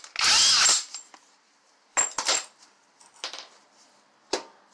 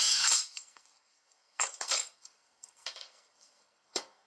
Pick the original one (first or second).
first